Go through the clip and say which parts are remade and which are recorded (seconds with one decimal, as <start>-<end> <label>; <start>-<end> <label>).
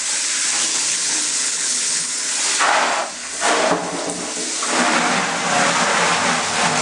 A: 0.0-0.7 recorded; 0.7-2.1 remade; 2.1-6.8 recorded